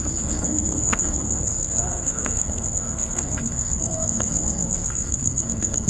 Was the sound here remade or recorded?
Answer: remade